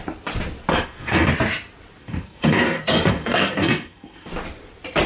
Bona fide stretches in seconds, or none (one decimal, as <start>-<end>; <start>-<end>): 0.0-0.7; 1.3-2.0; 4.3-5.1